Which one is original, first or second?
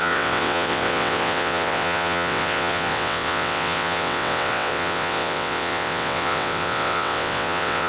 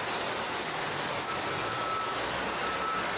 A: second